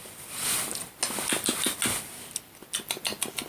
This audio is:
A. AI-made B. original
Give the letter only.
B